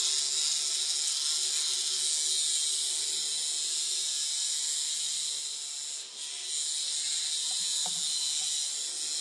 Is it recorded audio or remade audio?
recorded